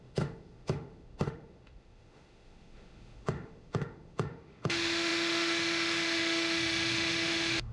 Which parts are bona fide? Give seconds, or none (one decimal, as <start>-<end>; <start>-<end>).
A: none